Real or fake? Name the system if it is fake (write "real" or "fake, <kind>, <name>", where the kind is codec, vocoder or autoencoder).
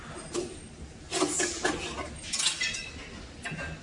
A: real